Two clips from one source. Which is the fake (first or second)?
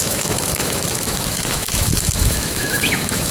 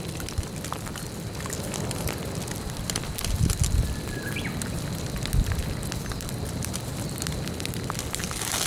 first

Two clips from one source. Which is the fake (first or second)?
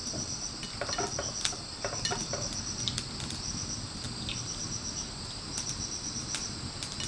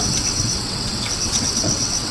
second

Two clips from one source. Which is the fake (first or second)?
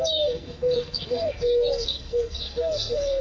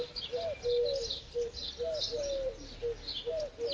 first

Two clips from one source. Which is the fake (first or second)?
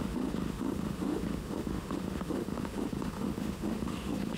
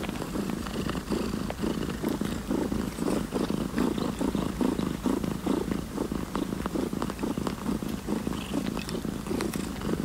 first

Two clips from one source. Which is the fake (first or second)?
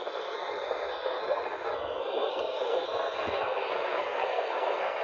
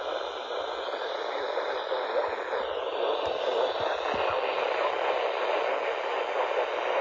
first